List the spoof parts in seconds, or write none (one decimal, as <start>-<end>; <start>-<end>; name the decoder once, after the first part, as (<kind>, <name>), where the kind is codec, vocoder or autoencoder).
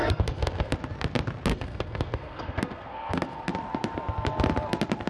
0.0-0.7 (codec, SNAC); 1.5-3.5